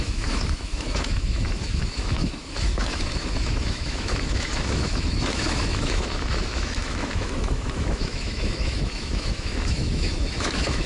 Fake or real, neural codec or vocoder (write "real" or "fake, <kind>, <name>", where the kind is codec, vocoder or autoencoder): fake, autoencoder, DAC-VAE